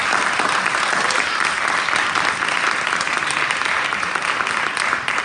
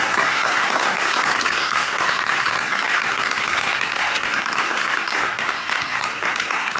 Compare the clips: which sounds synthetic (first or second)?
second